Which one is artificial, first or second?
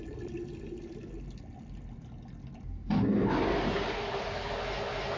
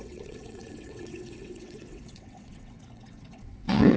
second